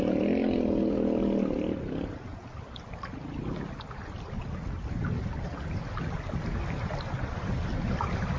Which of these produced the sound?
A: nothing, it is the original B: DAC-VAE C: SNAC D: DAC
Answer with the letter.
A